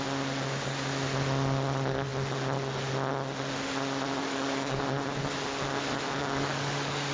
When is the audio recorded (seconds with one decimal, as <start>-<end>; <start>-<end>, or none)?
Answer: 0.0-4.2; 4.8-6.2